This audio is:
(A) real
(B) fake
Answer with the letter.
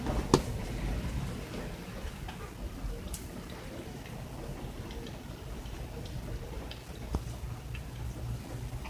A